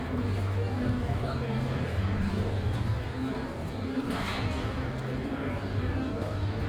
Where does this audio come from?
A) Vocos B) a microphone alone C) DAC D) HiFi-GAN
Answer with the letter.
C